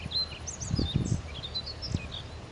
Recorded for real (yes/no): yes